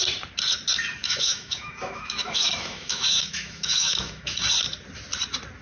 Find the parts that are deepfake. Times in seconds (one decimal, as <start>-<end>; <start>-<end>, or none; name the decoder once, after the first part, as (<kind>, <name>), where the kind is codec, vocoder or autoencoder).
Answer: 1.0-4.4 (autoencoder, DAC-VAE)